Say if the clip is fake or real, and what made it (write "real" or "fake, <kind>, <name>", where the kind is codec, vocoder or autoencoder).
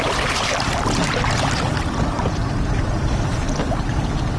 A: real